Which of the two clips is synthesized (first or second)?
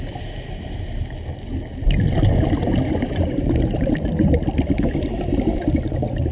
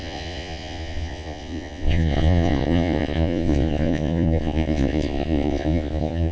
second